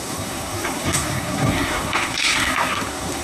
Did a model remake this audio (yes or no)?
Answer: yes